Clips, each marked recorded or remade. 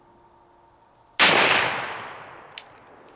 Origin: recorded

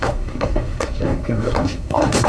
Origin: remade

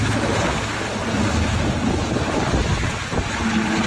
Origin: recorded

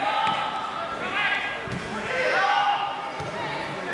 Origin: recorded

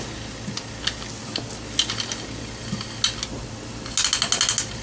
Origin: recorded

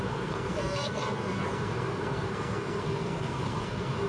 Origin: remade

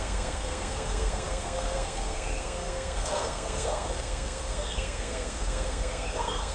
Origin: remade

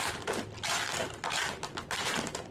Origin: recorded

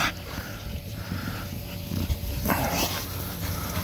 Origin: recorded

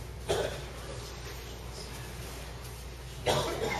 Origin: recorded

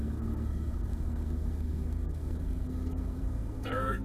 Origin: remade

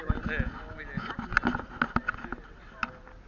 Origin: recorded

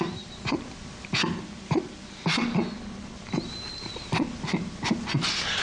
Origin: recorded